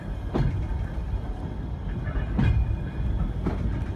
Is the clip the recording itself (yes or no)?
yes